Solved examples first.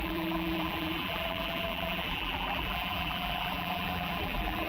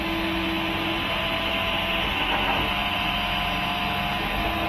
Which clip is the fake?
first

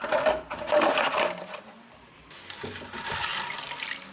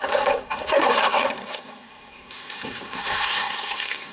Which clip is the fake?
second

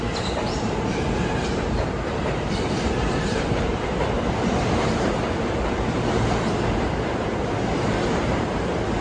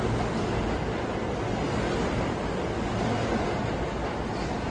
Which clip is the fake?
first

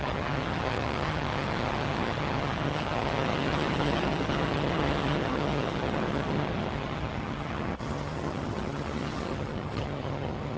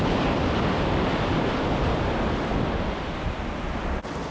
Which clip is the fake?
first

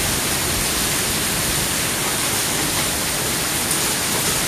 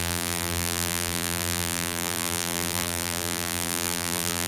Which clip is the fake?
second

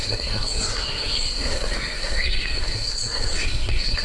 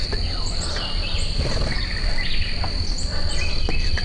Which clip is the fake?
first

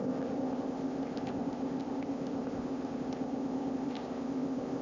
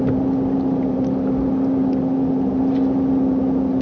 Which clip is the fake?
first